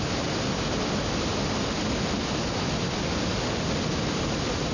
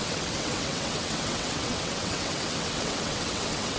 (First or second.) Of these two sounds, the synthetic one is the second